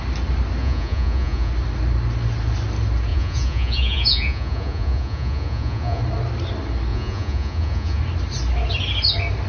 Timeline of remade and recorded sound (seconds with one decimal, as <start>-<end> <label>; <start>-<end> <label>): 0.0-0.6 recorded; 0.6-1.5 remade; 1.5-3.1 recorded; 3.1-6.0 remade; 6.0-6.9 recorded; 6.9-8.0 remade; 8.0-9.5 recorded